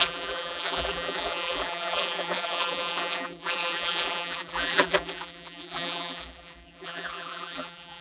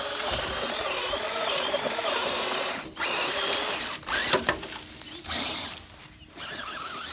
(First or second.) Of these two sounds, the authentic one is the second